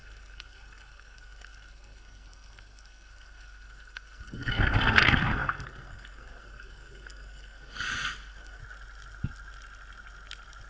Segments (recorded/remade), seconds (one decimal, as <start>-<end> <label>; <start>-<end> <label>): 0.0-8.6 remade; 8.6-10.7 recorded